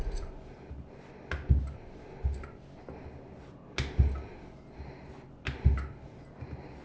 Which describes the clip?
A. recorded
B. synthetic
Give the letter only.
A